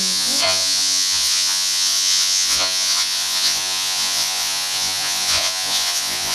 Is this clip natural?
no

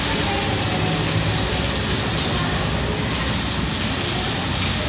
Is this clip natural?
yes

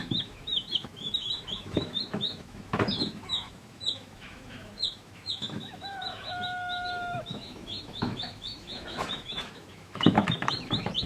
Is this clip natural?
no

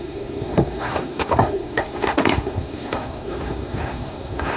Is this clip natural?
no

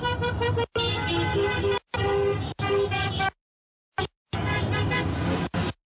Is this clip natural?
yes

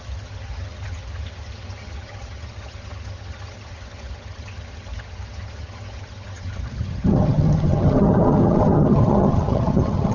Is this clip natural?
no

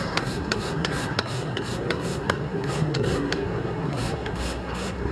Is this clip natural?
no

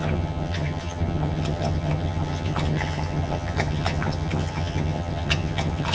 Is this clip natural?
no